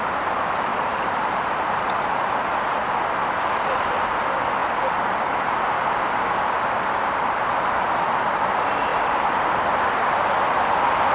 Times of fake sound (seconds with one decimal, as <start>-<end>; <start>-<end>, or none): 0.7-2.4; 8.9-9.5